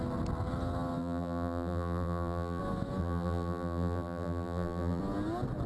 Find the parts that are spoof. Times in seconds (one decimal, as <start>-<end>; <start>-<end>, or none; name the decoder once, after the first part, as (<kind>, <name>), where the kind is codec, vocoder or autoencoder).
1.0-2.6 (vocoder, BigVGAN v2); 3.0-5.0